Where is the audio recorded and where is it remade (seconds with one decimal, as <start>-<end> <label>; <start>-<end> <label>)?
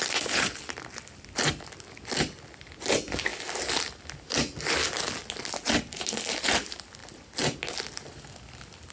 0.0-7.0 recorded; 7.0-7.6 remade; 7.6-8.9 recorded